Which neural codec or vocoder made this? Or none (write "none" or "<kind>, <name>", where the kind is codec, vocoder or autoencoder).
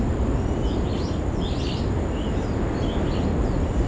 none